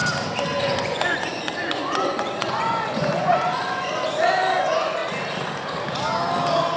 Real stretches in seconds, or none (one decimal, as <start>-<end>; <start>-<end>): 0.0-0.6; 5.0-6.8